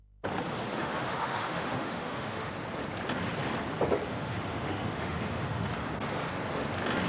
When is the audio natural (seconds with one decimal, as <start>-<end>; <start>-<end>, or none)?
0.0-0.7; 2.5-4.2; 5.7-7.1